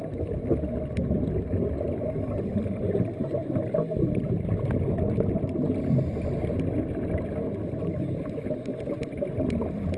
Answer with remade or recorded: recorded